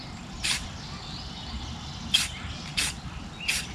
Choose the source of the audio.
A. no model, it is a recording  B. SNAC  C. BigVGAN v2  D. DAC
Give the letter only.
A